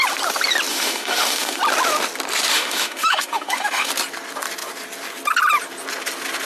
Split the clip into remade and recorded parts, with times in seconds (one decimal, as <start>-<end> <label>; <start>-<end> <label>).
0.0-0.7 recorded; 0.7-1.6 remade; 1.6-2.5 recorded; 2.5-3.9 remade; 3.9-6.5 recorded